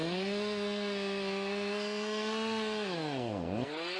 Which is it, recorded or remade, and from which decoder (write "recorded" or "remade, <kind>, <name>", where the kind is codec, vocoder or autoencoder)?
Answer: remade, codec, SNAC